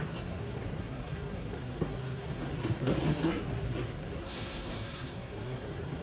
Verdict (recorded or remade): remade